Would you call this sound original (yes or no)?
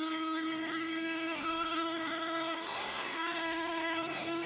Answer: no